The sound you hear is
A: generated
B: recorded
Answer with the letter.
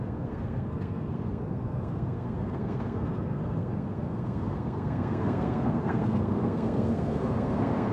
A